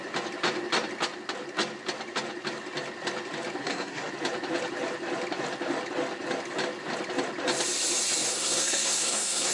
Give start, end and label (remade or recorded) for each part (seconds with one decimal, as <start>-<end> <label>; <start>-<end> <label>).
0.0-3.6 recorded; 3.6-4.1 remade; 4.1-8.3 recorded; 8.3-9.5 remade